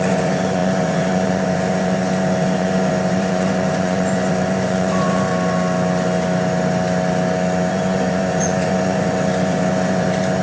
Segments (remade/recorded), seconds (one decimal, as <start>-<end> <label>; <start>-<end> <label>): 0.0-5.3 remade; 5.3-7.7 recorded; 7.7-10.4 remade